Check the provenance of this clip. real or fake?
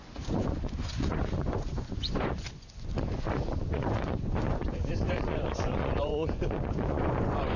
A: fake